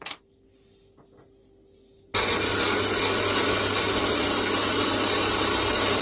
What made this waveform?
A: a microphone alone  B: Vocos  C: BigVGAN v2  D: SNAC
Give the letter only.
A